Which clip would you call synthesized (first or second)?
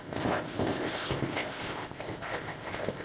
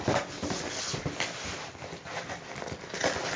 first